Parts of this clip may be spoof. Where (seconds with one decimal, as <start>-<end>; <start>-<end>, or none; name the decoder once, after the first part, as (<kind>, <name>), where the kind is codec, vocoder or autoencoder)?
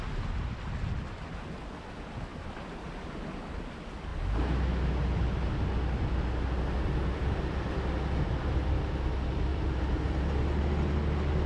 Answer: 2.3-3.1 (vocoder, BigVGAN v2); 9.5-10.2